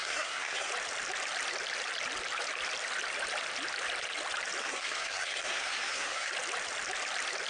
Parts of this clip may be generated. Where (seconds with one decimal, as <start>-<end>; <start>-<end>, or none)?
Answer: 0.0-0.7; 4.6-6.3